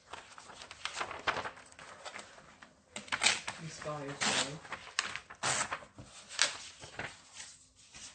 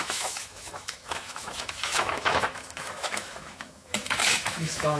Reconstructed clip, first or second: second